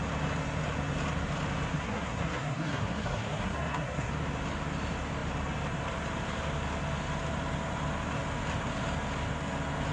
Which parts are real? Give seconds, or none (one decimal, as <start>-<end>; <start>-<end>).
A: 0.0-1.7; 4.1-9.9